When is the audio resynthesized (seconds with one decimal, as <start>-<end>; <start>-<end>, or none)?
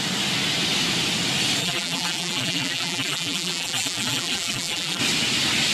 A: 1.6-5.0